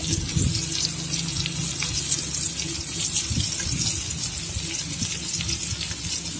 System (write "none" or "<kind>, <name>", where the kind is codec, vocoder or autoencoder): none